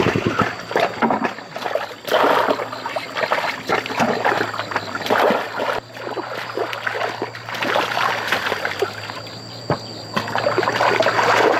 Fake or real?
real